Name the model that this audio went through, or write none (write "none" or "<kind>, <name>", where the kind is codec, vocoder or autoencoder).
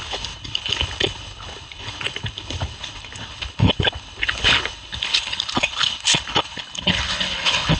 codec, HILCodec